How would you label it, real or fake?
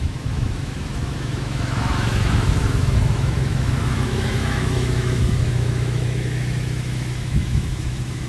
fake